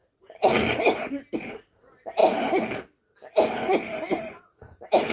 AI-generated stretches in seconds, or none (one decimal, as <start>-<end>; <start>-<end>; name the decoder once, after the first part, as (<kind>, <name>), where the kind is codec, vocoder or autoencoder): none